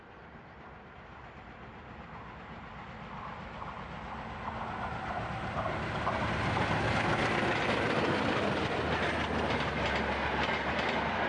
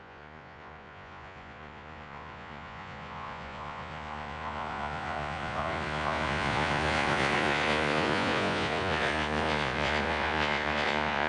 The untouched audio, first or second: first